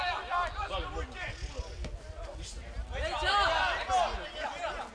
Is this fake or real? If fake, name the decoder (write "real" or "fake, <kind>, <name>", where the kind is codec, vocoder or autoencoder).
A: real